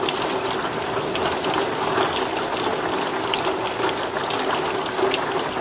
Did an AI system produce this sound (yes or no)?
no